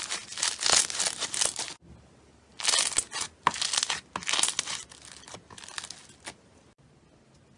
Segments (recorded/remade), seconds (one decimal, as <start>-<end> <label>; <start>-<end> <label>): 0.0-7.6 recorded